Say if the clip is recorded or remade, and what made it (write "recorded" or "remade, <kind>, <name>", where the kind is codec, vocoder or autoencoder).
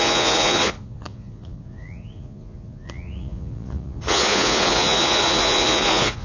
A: remade, vocoder, Vocos